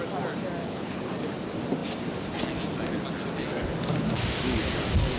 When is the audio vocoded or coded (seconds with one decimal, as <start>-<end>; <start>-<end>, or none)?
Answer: 0.6-1.1